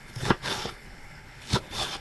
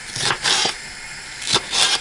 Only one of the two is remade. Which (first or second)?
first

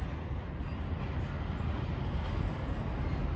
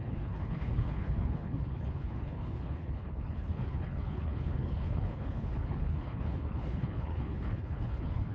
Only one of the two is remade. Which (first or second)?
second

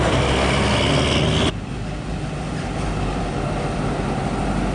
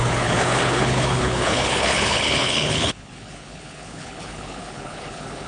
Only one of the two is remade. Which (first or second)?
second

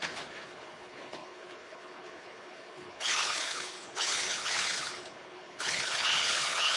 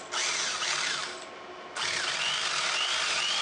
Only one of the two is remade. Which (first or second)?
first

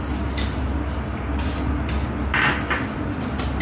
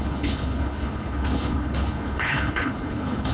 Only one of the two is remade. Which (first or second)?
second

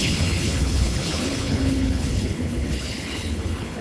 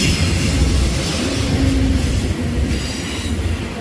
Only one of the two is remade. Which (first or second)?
first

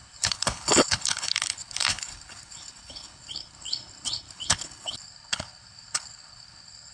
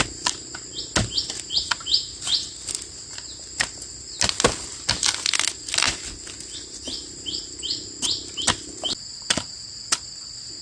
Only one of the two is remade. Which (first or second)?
first